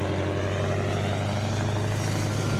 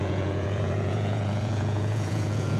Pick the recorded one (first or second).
first